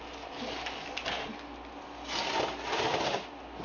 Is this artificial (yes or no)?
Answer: no